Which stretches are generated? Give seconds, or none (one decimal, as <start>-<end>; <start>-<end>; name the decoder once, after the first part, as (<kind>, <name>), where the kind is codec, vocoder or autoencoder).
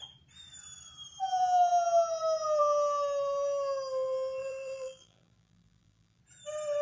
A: 4.4-6.2 (vocoder, BigVGAN v2)